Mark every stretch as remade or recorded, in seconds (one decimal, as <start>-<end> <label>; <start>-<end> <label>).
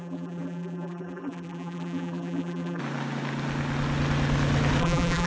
0.0-2.8 remade; 2.8-4.8 recorded; 4.8-5.3 remade